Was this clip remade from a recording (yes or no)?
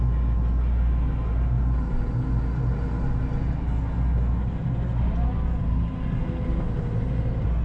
no